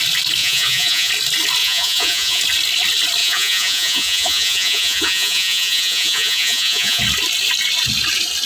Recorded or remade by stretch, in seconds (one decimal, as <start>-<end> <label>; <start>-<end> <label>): 0.0-0.4 recorded; 0.4-1.1 remade; 1.1-1.6 recorded; 1.6-2.4 remade; 2.4-3.2 recorded; 3.2-7.0 remade; 7.0-8.5 recorded